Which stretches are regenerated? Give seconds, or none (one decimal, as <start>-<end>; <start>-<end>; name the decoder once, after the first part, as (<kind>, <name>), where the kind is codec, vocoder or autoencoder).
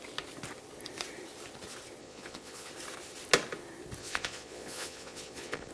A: 2.0-2.7 (vocoder, Vocos); 4.0-5.7